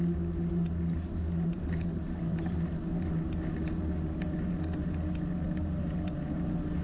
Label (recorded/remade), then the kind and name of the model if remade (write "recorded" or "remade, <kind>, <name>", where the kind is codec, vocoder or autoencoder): recorded